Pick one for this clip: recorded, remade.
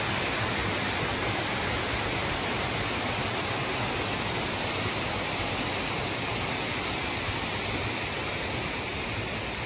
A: recorded